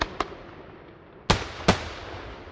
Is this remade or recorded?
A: recorded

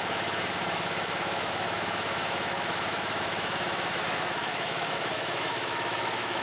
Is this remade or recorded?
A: remade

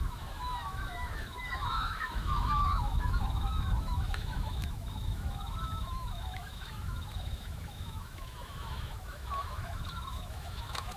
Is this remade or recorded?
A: remade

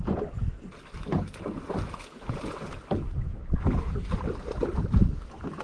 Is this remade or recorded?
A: recorded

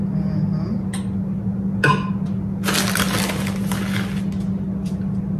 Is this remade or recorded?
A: recorded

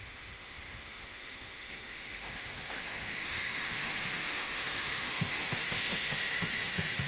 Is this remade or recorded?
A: remade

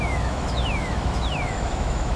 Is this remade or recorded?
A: remade